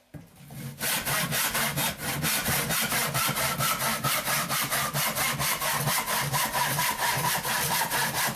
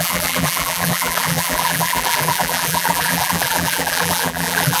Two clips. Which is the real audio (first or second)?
first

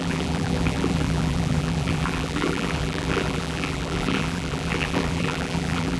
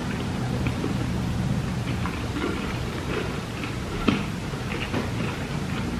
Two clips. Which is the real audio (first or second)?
second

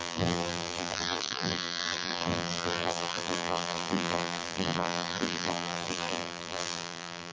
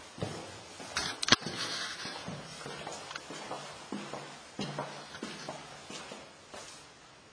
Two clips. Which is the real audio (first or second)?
second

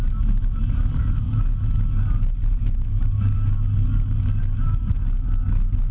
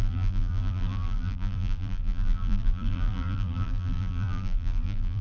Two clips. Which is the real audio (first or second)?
first